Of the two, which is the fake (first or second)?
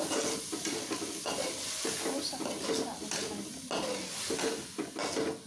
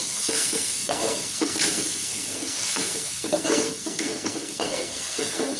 second